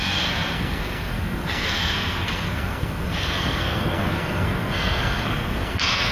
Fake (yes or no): yes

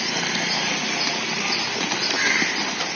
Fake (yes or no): no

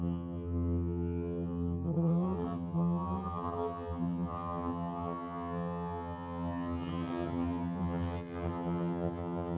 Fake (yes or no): yes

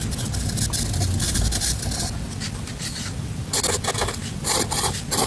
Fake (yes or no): no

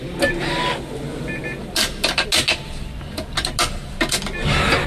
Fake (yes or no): no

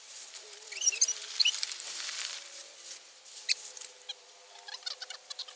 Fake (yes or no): yes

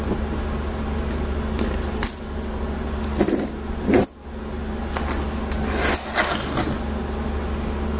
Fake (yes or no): no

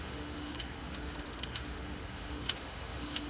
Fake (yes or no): yes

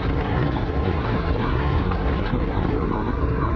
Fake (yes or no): yes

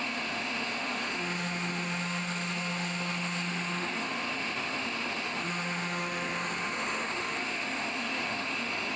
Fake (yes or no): yes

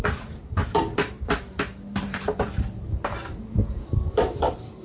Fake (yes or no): yes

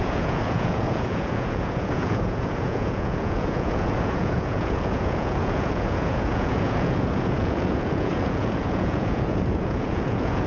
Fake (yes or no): yes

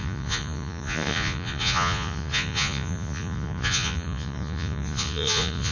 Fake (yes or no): yes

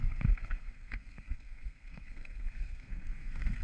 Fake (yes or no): yes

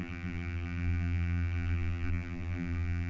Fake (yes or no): yes